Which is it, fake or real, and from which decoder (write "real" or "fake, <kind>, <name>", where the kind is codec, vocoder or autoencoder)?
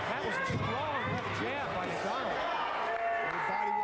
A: real